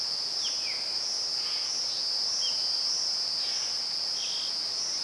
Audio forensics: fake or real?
real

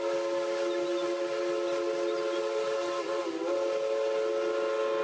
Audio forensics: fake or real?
real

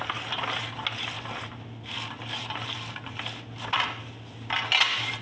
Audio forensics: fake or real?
real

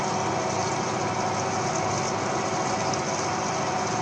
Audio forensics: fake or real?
real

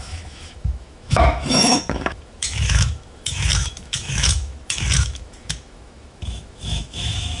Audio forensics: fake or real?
fake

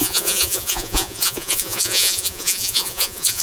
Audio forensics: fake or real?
fake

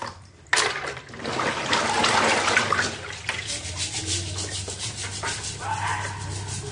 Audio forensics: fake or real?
real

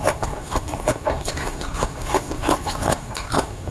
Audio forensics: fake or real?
fake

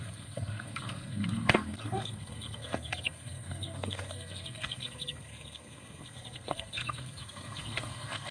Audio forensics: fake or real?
fake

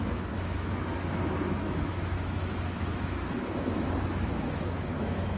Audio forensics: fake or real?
fake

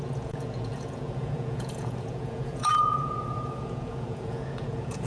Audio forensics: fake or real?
fake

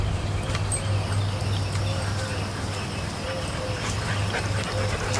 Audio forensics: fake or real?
real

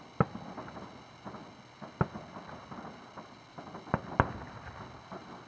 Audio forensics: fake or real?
real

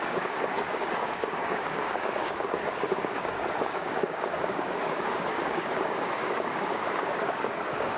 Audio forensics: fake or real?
fake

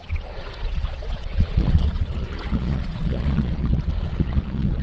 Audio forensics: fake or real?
fake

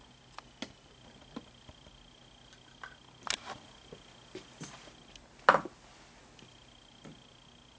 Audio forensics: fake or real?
real